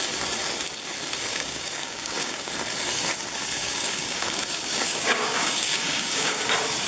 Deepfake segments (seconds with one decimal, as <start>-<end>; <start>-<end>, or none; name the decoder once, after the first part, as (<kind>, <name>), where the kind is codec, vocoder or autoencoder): 1.3-2.5 (codec, DAC); 3.6-6.5